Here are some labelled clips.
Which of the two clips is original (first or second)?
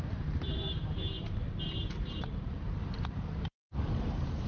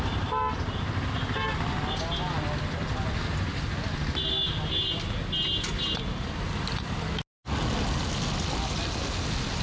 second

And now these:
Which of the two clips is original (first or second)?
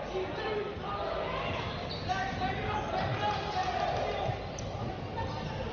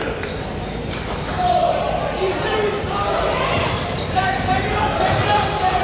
first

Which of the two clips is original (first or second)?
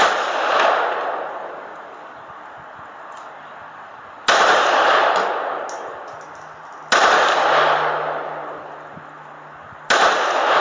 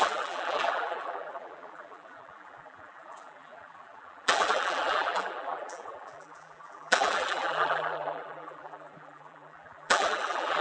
first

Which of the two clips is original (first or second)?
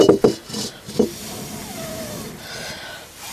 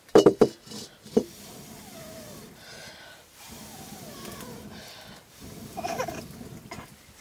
first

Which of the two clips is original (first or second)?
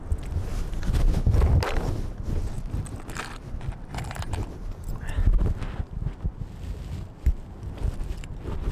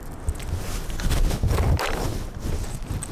first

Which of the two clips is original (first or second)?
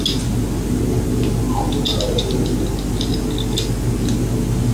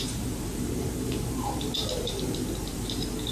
first